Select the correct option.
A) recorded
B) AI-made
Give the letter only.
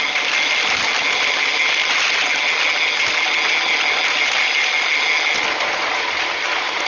A